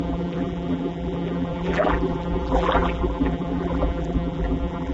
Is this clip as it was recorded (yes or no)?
no